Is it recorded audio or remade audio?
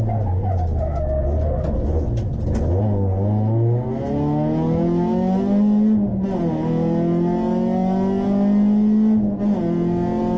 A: recorded